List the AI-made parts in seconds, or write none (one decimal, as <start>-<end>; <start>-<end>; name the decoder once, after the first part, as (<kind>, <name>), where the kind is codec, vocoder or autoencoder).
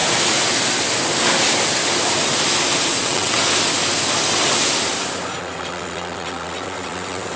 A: 3.0-3.4 (vocoder, WaveNeXt); 5.4-7.4